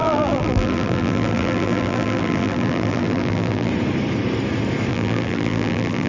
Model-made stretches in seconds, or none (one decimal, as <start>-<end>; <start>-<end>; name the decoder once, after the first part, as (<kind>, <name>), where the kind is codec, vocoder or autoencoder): 0.0-3.7 (vocoder, BigVGAN v2); 4.9-6.1